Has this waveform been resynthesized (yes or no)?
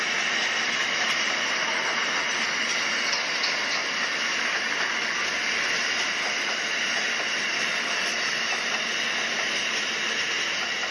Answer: no